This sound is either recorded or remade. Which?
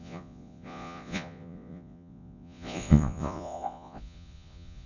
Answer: remade